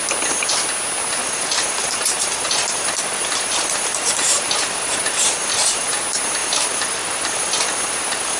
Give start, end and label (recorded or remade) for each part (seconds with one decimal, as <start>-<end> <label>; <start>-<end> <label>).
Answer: 0.0-1.2 recorded; 1.2-6.0 remade; 6.0-6.4 recorded; 6.4-8.4 remade